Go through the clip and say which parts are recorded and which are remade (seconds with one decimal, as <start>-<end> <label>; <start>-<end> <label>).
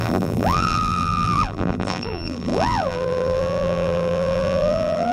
0.0-5.1 remade